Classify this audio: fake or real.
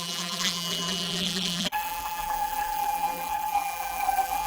fake